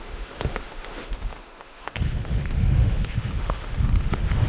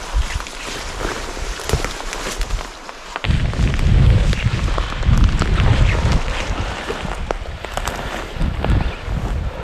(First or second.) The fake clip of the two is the first